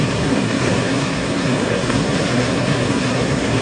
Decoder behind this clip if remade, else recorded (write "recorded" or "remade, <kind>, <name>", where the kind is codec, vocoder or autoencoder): remade, codec, SNAC